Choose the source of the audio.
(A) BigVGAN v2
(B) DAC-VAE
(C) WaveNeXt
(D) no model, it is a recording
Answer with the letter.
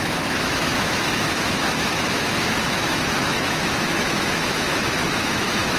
B